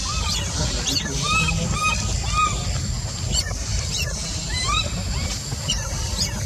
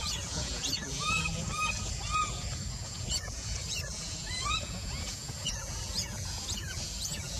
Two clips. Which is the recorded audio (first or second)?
first